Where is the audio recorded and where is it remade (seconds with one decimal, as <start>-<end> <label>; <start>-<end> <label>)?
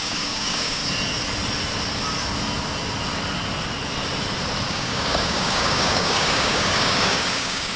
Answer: 0.0-0.8 remade; 0.8-4.7 recorded; 4.7-7.8 remade